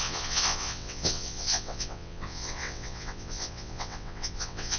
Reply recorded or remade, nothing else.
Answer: remade